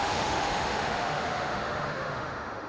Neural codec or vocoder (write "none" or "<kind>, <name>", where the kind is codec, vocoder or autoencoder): autoencoder, DAC-VAE